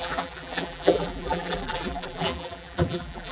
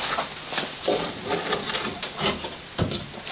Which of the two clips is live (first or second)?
second